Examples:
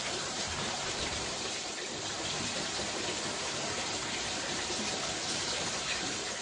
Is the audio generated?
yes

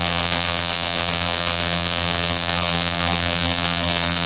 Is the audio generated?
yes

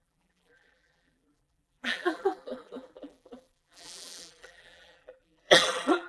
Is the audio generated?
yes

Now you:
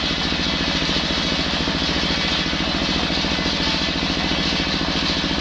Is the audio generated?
no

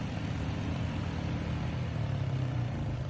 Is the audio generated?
yes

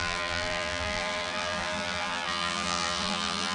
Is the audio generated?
yes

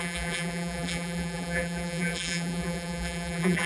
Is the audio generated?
yes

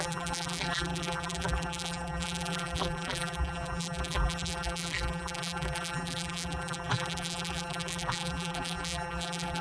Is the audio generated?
yes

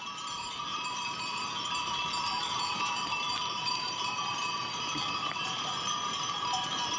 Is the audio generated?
yes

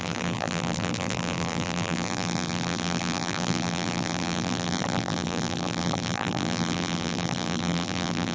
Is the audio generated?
yes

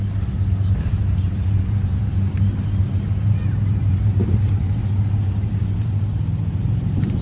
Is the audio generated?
yes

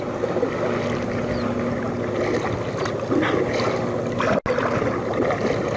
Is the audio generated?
no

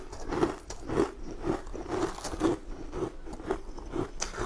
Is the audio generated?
no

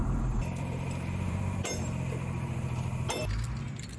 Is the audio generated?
yes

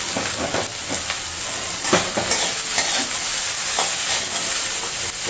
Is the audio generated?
no